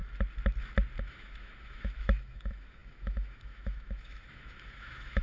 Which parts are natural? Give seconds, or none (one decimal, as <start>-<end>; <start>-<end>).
0.0-1.0